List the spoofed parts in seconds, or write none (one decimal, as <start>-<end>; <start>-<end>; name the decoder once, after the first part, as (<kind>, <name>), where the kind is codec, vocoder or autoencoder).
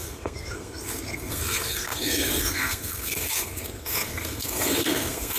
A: 0.0-5.4 (codec, SNAC)